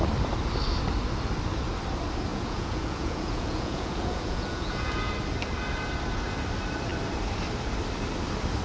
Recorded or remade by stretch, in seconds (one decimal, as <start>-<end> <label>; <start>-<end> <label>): 0.0-2.3 recorded; 2.3-5.1 remade; 5.1-8.6 recorded